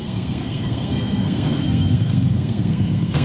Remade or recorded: remade